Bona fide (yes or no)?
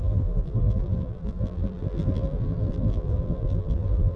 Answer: no